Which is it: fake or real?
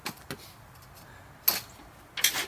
real